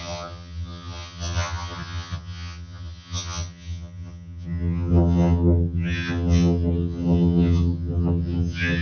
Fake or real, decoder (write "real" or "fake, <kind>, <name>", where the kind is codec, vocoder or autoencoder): fake, vocoder, HiFi-GAN